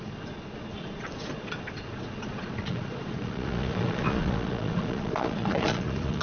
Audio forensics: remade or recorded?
remade